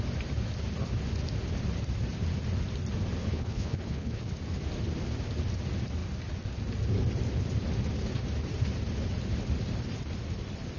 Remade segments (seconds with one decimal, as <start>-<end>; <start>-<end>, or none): 3.2-4.2